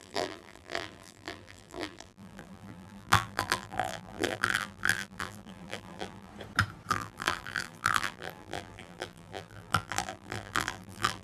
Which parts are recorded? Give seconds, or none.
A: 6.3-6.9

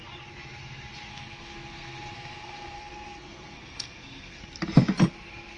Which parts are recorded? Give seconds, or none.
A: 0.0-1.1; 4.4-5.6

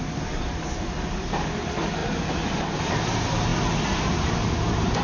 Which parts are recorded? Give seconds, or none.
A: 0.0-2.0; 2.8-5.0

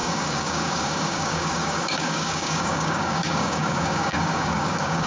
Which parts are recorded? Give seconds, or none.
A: none